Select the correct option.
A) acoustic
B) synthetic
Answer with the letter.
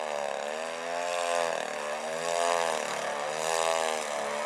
A